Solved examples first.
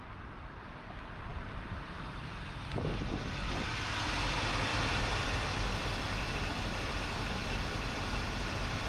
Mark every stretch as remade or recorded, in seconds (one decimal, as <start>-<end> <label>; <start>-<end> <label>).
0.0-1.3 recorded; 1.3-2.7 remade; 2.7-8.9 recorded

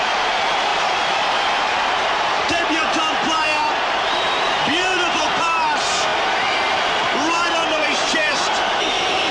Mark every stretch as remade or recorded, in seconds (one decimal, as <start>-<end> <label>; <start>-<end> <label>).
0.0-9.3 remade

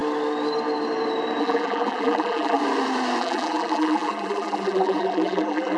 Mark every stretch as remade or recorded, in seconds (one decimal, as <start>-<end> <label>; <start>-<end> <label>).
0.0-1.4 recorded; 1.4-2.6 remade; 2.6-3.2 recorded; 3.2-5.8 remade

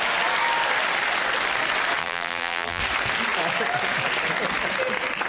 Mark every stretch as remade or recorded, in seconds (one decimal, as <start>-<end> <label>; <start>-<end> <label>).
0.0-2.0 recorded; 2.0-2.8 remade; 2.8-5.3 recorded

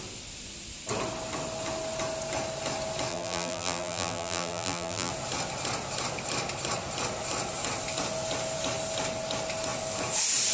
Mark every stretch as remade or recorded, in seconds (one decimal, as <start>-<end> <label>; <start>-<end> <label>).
0.0-3.1 recorded; 3.1-5.1 remade; 5.1-10.5 recorded